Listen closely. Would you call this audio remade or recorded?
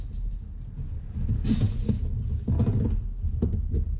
recorded